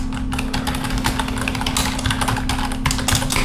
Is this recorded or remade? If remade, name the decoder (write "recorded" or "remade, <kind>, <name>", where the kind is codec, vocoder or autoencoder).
recorded